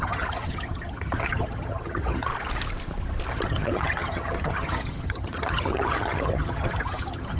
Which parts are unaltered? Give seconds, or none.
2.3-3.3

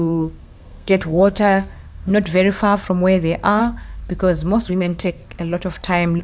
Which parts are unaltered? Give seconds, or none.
2.1-3.6; 4.0-4.7; 5.2-6.2

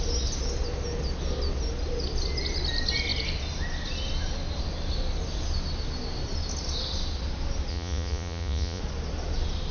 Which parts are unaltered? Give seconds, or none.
0.0-7.7; 8.8-9.7

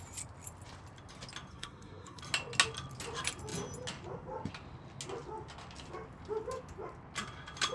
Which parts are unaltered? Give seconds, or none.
0.0-1.5; 2.2-7.7

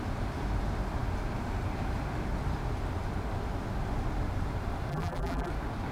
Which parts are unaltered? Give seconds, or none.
0.0-4.9; 5.5-5.9

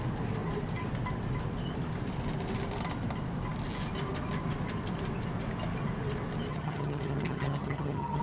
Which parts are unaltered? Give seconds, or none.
0.0-6.5

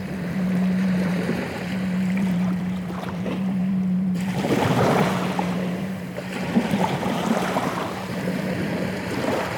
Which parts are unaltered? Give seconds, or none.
none